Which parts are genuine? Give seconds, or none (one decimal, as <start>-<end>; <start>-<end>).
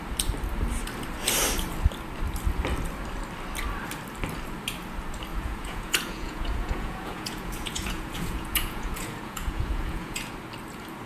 0.0-5.3; 10.3-11.1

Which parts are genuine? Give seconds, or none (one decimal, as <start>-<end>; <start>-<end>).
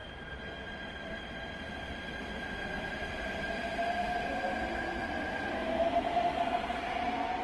4.4-5.0; 6.4-7.4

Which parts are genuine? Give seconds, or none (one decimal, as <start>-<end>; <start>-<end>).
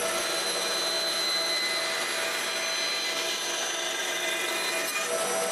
0.0-4.0; 4.5-5.5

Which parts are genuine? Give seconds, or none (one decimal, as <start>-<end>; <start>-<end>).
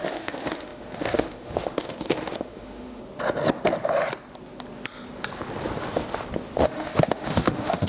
3.0-6.6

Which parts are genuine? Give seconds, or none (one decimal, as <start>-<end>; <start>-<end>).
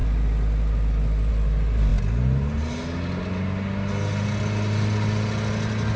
0.0-6.0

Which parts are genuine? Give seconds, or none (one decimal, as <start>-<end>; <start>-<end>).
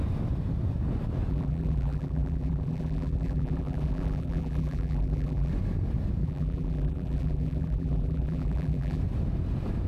0.0-1.3; 5.5-6.2; 9.0-9.9